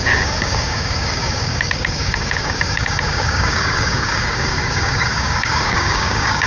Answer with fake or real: fake